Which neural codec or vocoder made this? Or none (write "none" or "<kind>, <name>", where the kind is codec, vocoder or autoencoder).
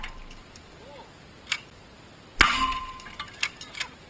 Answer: none